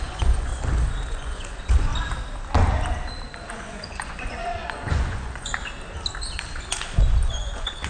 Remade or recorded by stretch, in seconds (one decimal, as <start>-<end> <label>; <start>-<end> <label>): 0.0-0.5 remade; 0.5-1.1 recorded; 1.1-1.9 remade; 1.9-3.5 recorded; 3.5-5.5 remade; 5.5-7.3 recorded; 7.3-7.9 remade